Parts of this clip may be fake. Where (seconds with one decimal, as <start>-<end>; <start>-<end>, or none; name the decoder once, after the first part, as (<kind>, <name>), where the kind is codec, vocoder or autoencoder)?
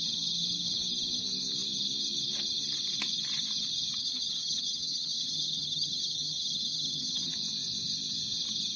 4.0-7.3 (vocoder, HiFi-GAN)